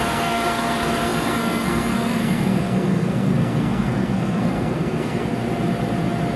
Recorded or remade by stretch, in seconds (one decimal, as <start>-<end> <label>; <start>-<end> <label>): 0.0-5.4 remade; 5.4-6.4 recorded